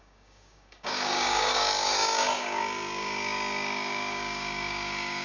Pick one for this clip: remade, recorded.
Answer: remade